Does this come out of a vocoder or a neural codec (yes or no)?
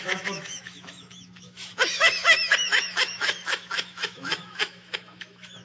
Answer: yes